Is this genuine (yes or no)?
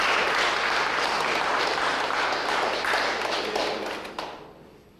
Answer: yes